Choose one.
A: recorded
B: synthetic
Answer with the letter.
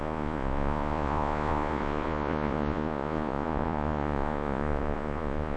B